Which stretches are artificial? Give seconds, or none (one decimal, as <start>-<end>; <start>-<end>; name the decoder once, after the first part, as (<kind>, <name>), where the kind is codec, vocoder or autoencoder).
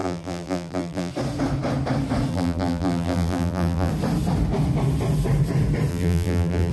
0.0-1.1 (vocoder, BigVGAN v2); 2.3-3.9; 5.9-6.7